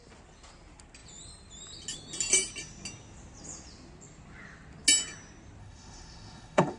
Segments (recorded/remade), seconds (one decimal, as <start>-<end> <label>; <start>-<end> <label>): 0.0-5.6 recorded; 5.6-6.8 remade